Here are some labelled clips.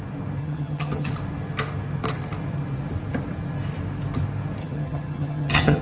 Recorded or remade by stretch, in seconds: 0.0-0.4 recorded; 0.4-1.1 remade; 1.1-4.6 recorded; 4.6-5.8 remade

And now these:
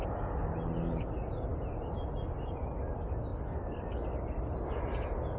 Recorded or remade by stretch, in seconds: 0.0-5.4 recorded

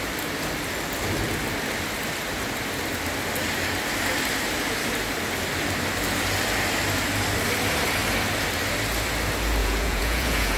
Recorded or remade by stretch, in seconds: 0.0-9.6 recorded; 9.6-10.6 remade

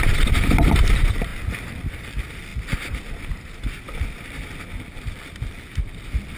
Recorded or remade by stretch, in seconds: 0.0-2.5 remade; 2.5-5.0 recorded; 5.0-6.4 remade

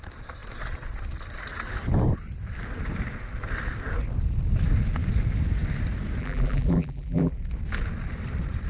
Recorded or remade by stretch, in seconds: 0.0-6.2 recorded; 6.2-7.3 remade; 7.3-8.7 recorded

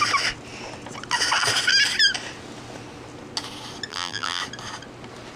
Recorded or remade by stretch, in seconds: 0.0-3.9 recorded; 3.9-4.4 remade; 4.4-5.4 recorded

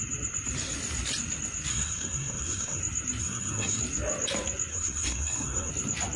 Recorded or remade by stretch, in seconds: 0.0-1.7 recorded; 1.7-2.8 remade; 2.8-3.2 recorded; 3.2-3.8 remade; 3.8-4.7 recorded; 4.7-5.7 remade; 5.7-6.2 recorded